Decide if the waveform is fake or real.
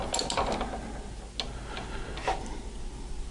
real